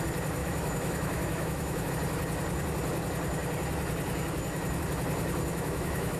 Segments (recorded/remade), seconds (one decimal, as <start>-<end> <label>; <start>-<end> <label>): 0.0-0.4 recorded; 0.4-1.9 remade; 1.9-5.5 recorded; 5.5-6.2 remade